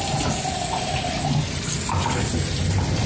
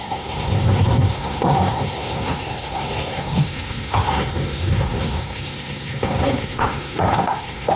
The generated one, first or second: second